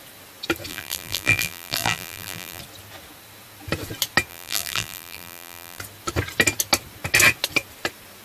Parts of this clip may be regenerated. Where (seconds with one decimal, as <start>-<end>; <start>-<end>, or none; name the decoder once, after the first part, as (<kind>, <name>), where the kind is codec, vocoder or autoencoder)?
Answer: 0.7-2.6 (vocoder, BigVGAN v2); 4.3-5.8

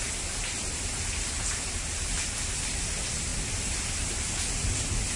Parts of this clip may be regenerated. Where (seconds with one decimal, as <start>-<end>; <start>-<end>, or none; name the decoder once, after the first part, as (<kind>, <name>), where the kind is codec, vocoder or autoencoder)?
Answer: 0.0-5.2 (vocoder, BigVGAN v2)

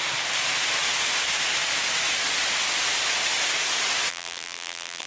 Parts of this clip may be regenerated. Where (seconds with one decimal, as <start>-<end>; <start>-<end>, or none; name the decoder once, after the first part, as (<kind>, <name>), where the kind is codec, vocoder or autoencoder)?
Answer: 4.1-5.1 (vocoder, BigVGAN v2)

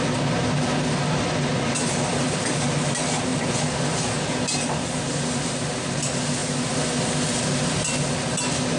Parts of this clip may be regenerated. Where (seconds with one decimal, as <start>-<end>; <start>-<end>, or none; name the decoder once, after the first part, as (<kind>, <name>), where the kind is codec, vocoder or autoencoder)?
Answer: none

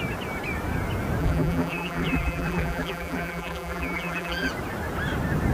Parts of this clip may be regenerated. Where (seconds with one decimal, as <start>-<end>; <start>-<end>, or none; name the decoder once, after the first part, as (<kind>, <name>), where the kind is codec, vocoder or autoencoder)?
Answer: 1.2-4.5 (vocoder, BigVGAN v2)

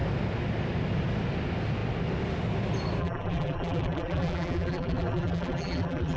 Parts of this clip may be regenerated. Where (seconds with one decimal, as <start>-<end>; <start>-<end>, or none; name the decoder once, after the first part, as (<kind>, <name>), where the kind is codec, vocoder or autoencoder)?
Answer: 3.0-6.2 (vocoder, BigVGAN v2)